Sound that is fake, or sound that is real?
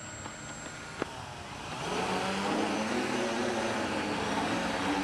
real